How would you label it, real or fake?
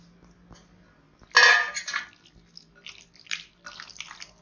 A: real